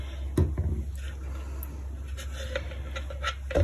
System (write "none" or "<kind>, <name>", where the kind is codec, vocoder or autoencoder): none